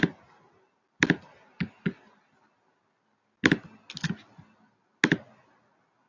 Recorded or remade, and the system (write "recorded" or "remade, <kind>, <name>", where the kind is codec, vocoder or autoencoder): recorded